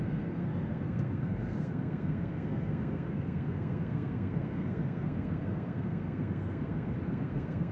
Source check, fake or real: fake